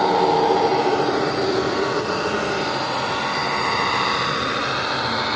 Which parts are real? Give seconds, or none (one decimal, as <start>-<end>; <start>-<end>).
0.0-0.7; 1.9-5.4